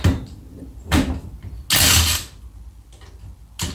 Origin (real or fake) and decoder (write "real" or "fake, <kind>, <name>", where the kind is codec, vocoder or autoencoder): real